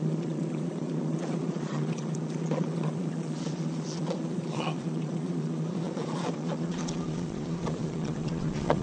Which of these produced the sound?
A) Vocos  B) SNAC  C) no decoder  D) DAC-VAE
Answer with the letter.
A